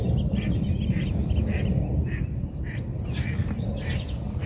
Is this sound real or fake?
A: real